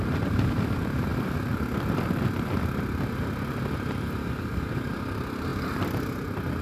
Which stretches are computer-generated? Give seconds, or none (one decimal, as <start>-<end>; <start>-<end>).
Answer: 4.2-4.9